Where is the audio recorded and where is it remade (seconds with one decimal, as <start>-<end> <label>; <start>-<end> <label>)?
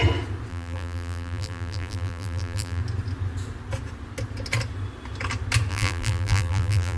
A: 0.0-0.5 recorded; 0.5-2.8 remade; 2.8-5.7 recorded; 5.7-7.0 remade